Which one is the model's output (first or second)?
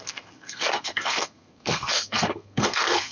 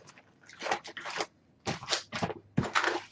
first